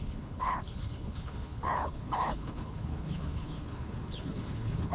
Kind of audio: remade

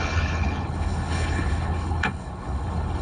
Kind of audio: remade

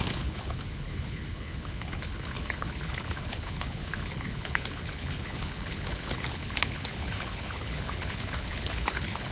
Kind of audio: remade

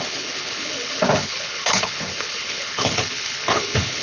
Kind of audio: remade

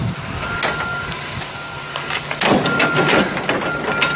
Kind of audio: recorded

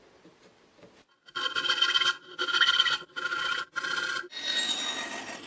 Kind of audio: recorded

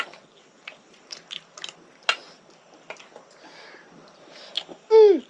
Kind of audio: recorded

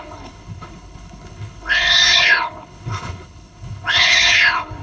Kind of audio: remade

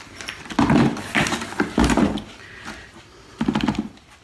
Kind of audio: recorded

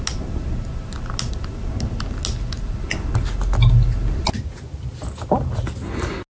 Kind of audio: recorded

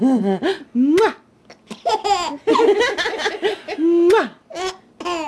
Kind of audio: recorded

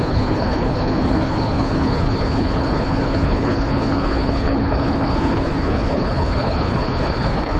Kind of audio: remade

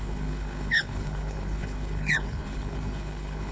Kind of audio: remade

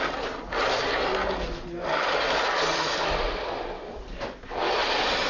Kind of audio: recorded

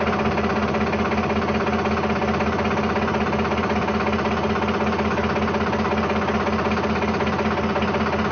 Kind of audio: recorded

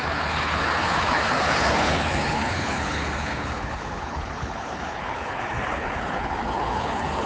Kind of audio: remade